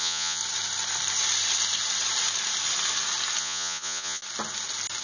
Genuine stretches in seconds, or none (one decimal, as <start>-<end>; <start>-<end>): 0.4-3.4; 4.2-5.0